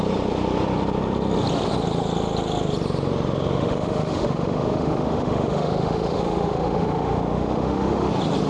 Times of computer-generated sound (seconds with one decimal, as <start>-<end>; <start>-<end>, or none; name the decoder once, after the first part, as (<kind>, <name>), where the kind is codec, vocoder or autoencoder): 3.6-8.1 (autoencoder, DAC-VAE)